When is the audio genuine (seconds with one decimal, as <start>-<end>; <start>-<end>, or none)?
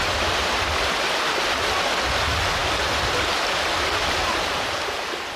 0.0-5.4